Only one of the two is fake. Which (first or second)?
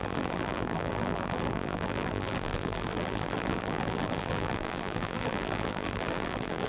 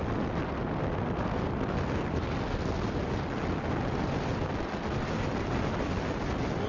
first